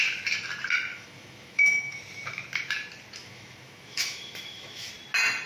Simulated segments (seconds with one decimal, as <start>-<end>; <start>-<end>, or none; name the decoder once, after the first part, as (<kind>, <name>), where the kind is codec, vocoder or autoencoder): 0.9-2.0 (autoencoder, DAC-VAE); 3.2-4.9